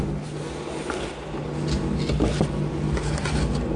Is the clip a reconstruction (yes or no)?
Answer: no